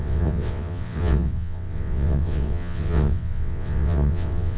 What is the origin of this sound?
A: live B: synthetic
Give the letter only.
B